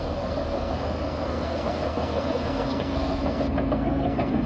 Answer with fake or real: fake